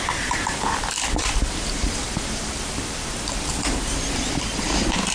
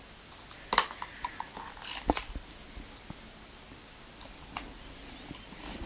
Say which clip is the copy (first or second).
first